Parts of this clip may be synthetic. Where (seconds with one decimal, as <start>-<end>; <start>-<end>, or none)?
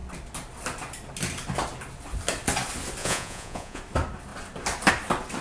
3.0-3.8